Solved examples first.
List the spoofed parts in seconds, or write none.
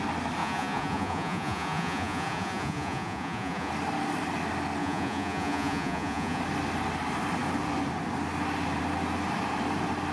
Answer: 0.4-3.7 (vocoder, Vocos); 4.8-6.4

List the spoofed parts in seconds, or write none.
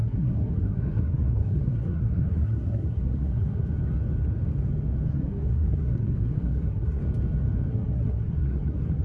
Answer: 0.0-3.6 (codec, SNAC); 5.1-7.0; 7.7-9.0